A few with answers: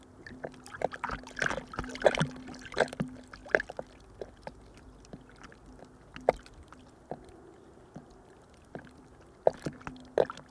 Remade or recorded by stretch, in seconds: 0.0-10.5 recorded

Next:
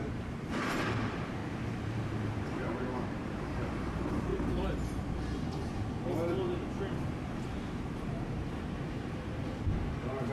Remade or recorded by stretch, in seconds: 0.0-4.3 remade; 4.3-7.5 recorded; 7.5-10.3 remade

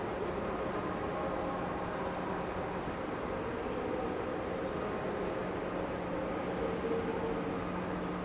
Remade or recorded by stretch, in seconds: 0.0-8.2 recorded